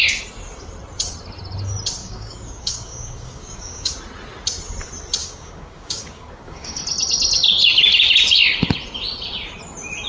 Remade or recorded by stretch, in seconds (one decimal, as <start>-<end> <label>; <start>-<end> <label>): 0.0-2.0 recorded; 2.0-3.9 remade; 3.9-5.2 recorded; 5.2-6.8 remade; 6.8-10.1 recorded